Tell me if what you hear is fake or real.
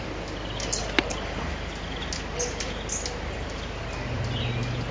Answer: real